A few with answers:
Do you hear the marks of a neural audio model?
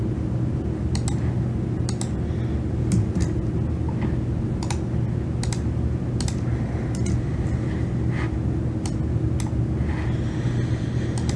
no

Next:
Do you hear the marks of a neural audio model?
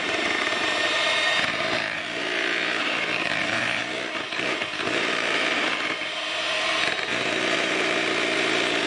yes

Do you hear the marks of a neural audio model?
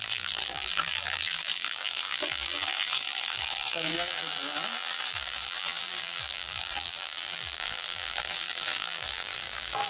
yes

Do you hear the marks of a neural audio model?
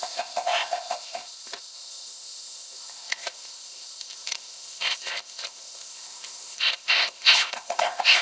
yes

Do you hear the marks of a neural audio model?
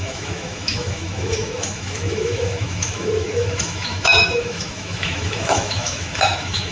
yes